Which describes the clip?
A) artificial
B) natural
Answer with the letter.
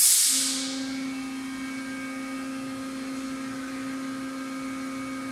B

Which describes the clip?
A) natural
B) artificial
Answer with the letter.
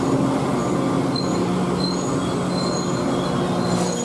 A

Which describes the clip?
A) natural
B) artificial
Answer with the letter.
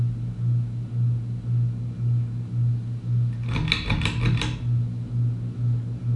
A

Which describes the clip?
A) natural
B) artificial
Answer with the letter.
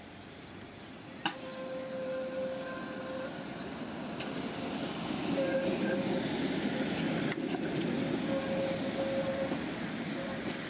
A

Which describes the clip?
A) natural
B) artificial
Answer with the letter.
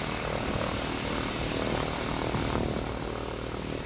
A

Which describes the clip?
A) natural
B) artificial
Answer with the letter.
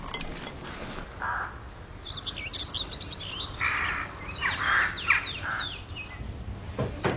A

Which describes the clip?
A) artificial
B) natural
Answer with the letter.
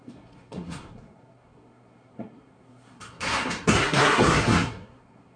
A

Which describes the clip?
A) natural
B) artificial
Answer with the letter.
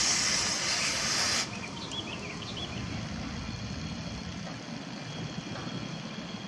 A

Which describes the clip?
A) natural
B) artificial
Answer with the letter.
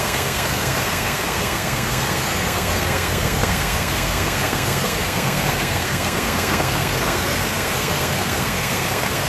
B